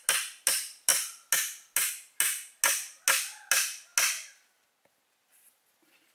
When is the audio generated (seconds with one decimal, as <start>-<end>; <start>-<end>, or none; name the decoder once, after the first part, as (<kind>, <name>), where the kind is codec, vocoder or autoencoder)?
none